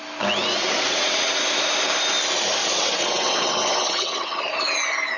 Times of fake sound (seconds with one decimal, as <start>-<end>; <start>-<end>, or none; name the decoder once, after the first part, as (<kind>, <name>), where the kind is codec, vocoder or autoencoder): 0.5-1.4 (vocoder, WaveNeXt); 2.6-4.4